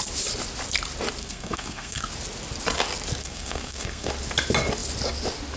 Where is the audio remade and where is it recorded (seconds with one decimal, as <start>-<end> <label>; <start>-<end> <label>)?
0.0-1.2 recorded; 1.2-2.1 remade; 2.1-3.2 recorded; 3.2-4.1 remade; 4.1-5.6 recorded